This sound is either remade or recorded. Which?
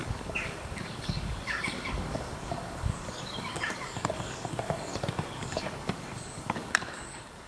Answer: remade